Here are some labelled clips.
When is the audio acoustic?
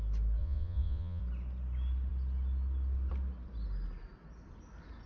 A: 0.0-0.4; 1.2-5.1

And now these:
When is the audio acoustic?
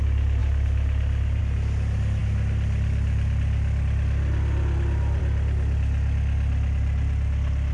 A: 0.0-7.7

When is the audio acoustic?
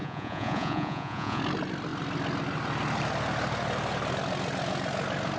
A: 1.4-5.4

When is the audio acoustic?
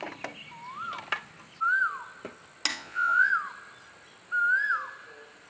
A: 0.0-2.7; 3.3-5.5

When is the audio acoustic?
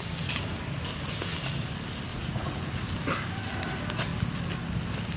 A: 0.0-2.1; 2.7-5.2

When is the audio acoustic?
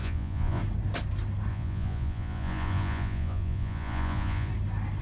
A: 0.6-1.5; 4.5-5.0